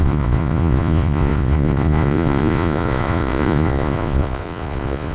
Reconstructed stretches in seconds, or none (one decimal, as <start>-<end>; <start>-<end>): 0.0-5.1